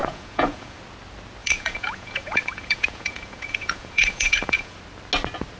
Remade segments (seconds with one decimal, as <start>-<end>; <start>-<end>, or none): 0.0-0.8; 1.4-4.8